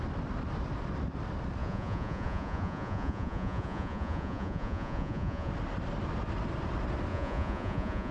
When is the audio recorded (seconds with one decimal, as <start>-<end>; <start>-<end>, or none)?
0.0-1.6; 5.5-7.1